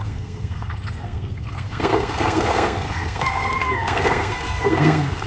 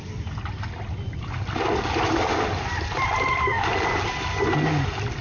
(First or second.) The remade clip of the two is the first